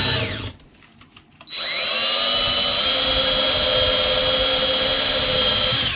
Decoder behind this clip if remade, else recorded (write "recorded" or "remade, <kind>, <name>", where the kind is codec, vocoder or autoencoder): recorded